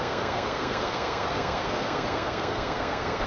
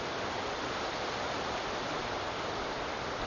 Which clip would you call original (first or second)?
second